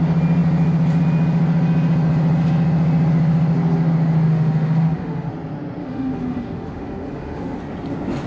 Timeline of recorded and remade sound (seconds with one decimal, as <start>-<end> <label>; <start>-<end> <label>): 0.0-4.3 recorded; 4.3-5.3 remade; 5.3-5.8 recorded; 5.8-7.6 remade; 7.6-8.3 recorded